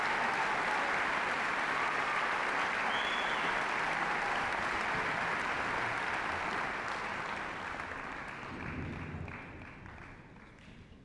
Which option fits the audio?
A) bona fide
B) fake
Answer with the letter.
A